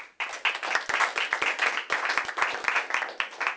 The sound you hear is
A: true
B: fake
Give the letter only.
A